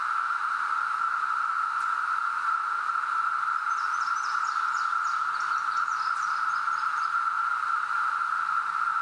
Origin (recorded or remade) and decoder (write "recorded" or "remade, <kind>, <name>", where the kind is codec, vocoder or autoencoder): recorded